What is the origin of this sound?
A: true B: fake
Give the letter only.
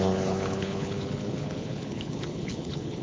B